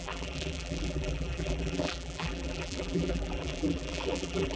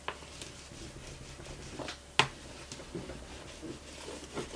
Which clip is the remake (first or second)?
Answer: first